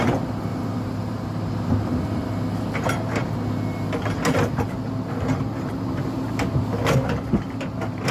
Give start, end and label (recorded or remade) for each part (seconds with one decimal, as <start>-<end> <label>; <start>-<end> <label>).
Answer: 0.0-0.5 recorded; 0.5-1.9 remade; 1.9-8.1 recorded